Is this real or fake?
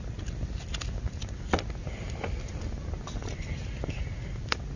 real